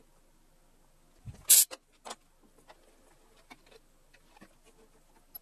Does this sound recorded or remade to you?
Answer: recorded